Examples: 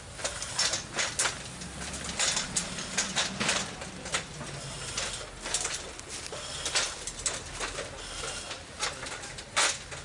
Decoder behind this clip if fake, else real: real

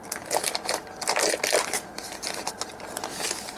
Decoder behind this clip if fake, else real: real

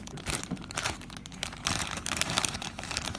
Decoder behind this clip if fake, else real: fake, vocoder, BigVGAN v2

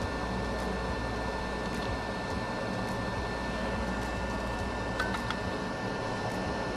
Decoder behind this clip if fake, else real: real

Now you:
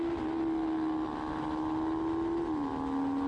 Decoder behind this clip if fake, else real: real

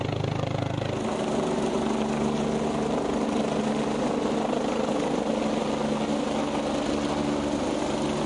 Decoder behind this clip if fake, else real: real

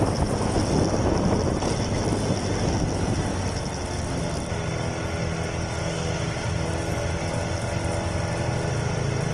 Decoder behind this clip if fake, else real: real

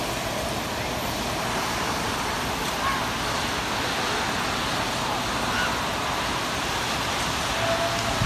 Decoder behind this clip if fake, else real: real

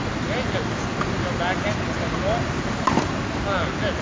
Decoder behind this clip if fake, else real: real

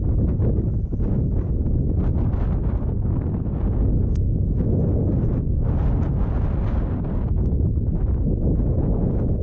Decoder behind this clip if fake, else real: real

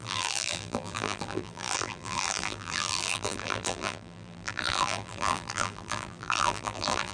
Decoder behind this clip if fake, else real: fake, vocoder, BigVGAN v2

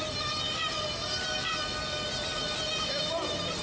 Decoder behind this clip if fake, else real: real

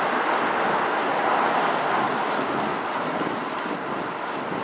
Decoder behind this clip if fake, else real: real